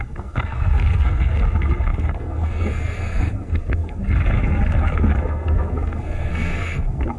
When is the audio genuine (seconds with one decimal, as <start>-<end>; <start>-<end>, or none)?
none